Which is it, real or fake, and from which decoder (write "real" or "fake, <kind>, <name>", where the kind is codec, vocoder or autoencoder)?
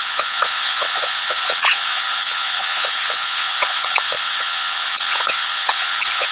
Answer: fake, vocoder, WaveNeXt